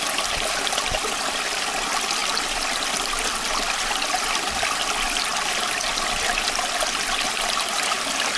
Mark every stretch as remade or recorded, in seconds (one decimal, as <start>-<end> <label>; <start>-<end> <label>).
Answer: 0.0-8.4 recorded